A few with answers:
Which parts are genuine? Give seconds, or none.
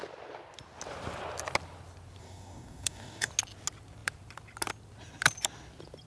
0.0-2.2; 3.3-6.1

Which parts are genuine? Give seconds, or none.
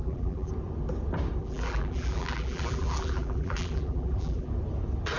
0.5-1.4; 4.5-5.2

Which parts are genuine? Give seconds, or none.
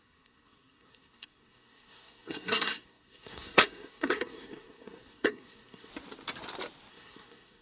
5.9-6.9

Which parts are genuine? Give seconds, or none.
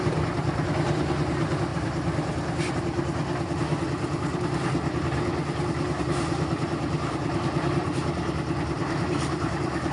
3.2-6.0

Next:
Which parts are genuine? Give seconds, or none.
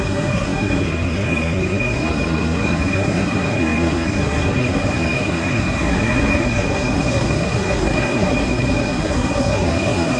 none